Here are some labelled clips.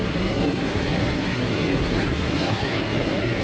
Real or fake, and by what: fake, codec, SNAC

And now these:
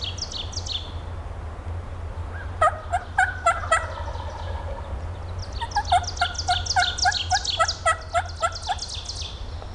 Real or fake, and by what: real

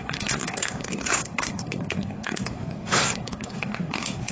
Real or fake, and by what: fake, codec, SNAC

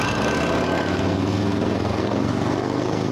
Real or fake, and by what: fake, codec, SNAC